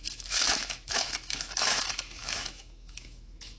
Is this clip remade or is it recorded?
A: remade